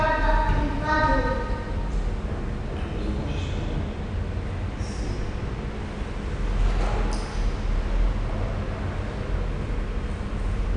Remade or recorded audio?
recorded